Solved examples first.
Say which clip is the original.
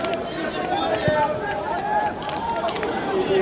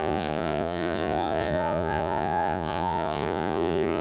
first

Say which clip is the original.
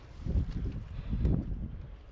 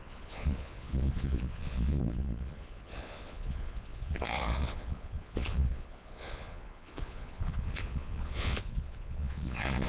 first